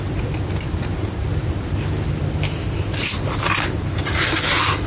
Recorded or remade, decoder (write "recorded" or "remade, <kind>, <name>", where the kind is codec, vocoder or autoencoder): recorded